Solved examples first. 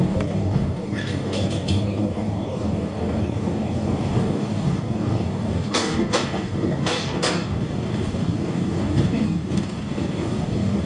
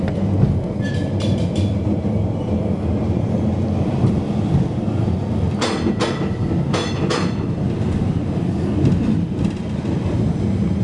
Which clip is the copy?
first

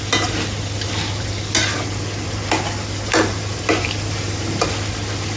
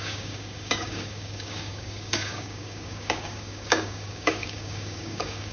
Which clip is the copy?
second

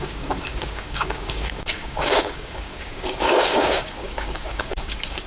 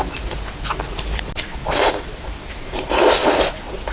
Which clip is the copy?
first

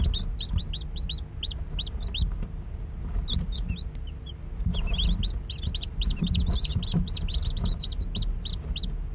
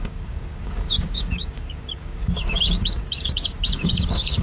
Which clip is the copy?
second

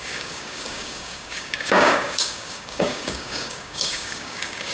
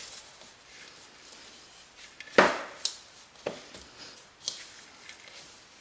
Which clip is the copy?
first